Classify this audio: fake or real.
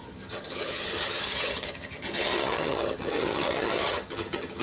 fake